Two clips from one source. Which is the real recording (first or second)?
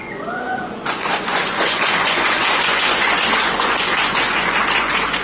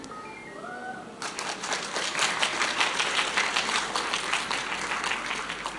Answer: second